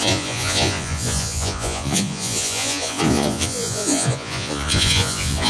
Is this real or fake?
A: fake